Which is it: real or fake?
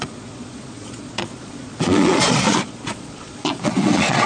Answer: fake